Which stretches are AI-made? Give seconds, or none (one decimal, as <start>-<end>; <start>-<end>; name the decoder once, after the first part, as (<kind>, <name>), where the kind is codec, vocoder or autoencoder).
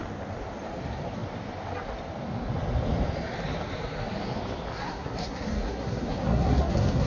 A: 4.8-7.1 (codec, SNAC)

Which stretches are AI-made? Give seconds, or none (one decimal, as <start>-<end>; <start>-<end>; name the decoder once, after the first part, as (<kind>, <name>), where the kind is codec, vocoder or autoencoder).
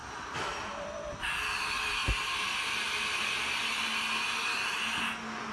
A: 0.0-2.0 (vocoder, BigVGAN v2)